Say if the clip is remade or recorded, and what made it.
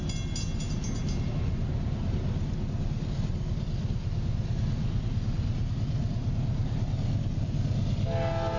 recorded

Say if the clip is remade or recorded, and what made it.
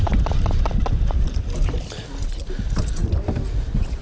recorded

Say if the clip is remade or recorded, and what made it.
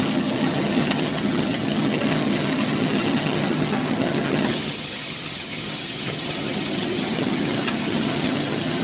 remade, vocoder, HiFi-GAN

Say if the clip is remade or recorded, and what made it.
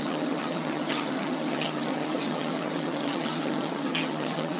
remade, vocoder, HiFi-GAN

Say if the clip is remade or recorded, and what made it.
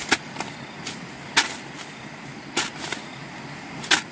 recorded